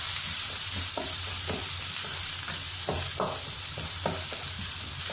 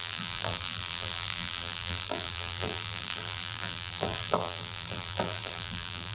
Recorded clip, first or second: first